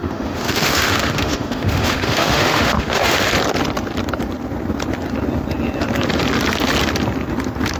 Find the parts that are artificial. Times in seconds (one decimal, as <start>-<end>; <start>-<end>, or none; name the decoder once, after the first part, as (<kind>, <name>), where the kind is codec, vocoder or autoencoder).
0.0-3.2 (autoencoder, DAC-VAE)